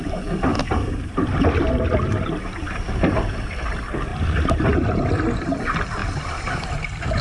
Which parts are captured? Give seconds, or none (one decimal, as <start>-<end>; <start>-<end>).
4.1-5.1; 6.0-7.2